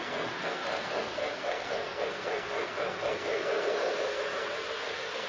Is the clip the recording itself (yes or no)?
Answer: no